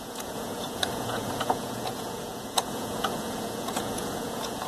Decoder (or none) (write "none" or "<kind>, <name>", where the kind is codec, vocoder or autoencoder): vocoder, Vocos